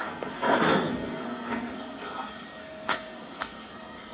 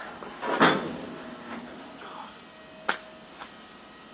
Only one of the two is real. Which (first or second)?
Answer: second